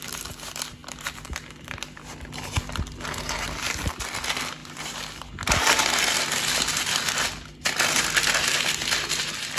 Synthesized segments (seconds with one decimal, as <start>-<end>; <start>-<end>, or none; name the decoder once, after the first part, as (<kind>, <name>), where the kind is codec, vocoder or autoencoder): none